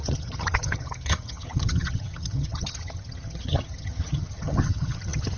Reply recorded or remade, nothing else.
remade